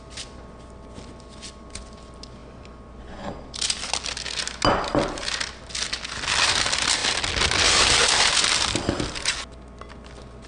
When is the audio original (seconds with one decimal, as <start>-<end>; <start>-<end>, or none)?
0.0-10.5